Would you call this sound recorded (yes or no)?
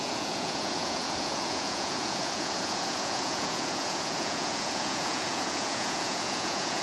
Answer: no